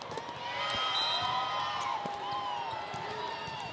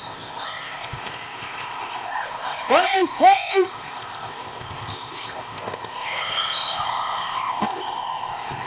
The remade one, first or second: second